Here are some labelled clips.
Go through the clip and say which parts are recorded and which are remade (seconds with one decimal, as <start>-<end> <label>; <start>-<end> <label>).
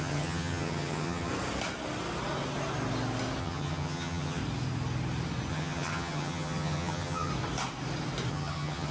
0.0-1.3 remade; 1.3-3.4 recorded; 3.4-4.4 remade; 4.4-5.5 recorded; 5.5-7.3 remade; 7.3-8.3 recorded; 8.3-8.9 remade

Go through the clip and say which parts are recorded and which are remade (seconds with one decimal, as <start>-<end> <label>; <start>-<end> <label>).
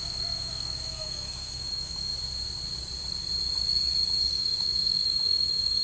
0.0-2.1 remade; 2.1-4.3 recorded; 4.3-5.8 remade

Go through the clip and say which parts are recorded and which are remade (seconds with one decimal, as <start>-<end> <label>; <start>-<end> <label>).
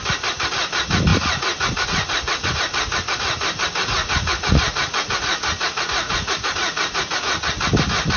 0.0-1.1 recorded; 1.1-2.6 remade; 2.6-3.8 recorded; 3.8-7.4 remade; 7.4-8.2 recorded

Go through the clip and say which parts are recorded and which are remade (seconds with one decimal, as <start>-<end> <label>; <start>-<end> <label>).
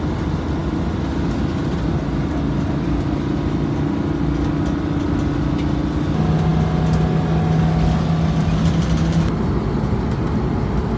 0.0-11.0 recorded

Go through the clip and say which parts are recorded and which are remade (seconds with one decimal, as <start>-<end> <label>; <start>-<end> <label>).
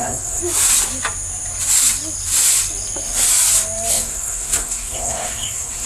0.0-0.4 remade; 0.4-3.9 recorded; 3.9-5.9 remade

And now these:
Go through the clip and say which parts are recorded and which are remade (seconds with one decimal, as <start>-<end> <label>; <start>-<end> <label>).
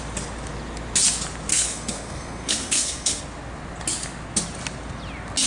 0.0-1.5 recorded; 1.5-3.2 remade; 3.2-5.5 recorded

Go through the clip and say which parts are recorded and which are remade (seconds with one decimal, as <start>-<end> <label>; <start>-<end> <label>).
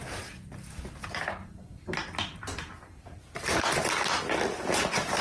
0.0-5.2 recorded